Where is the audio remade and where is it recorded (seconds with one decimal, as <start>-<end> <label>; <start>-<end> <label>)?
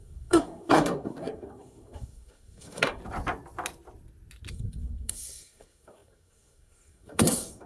0.0-3.0 remade; 3.0-4.5 recorded; 4.5-7.7 remade